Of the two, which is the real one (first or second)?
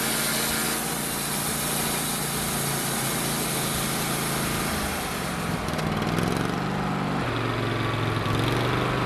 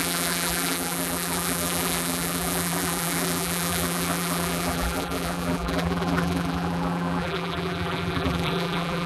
first